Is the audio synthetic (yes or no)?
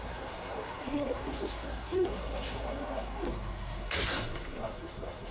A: yes